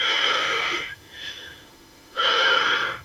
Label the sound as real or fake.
fake